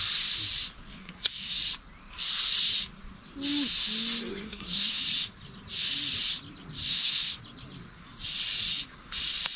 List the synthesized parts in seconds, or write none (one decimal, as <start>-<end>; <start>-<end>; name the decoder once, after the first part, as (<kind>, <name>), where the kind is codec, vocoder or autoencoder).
1.0-1.5 (codec, SNAC); 4.3-5.0; 6.8-7.4